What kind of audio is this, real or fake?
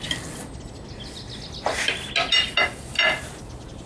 real